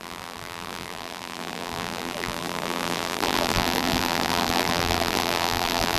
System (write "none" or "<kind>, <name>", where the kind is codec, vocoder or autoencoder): vocoder, BigVGAN v2